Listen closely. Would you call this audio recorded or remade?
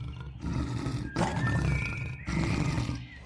recorded